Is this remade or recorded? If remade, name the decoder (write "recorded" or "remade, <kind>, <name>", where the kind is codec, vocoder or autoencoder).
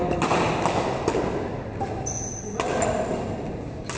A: recorded